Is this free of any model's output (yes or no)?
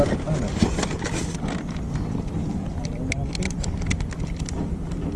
yes